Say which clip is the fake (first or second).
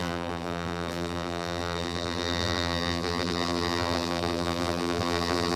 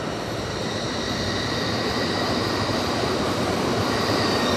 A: first